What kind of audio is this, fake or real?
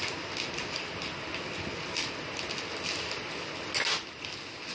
real